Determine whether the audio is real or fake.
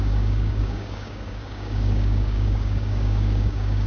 fake